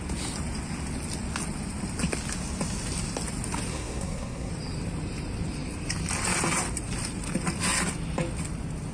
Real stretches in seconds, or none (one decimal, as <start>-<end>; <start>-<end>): 0.0-3.7; 4.5-8.9